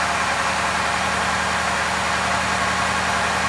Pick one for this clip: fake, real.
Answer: real